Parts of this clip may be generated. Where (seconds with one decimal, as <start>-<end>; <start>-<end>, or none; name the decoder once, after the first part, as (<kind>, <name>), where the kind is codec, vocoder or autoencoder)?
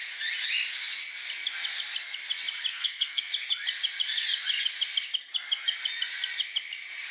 2.7-3.3 (codec, SNAC)